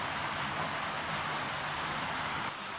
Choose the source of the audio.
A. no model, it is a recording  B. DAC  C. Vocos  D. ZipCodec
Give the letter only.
A